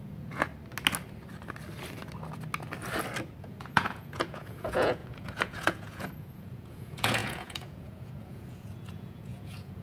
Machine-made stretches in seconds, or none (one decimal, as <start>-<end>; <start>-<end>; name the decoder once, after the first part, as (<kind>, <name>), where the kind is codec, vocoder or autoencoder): 0.0-0.5 (vocoder, Vocos); 3.4-9.8